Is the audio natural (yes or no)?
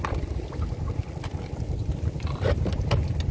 yes